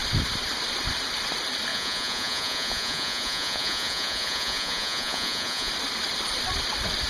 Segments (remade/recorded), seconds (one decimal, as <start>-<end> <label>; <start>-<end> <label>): 0.0-1.7 recorded; 1.7-5.7 remade; 5.7-7.1 recorded